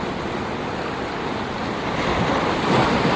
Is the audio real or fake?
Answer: real